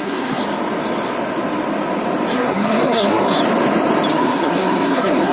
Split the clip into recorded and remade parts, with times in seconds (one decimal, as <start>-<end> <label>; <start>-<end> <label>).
0.0-0.4 remade; 0.4-2.3 recorded; 2.3-3.4 remade; 3.4-4.1 recorded; 4.1-5.3 remade